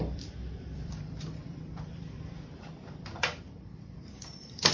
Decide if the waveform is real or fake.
fake